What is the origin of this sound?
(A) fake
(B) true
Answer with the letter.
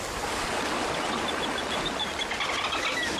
B